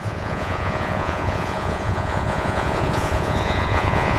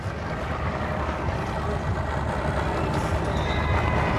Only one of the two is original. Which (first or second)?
second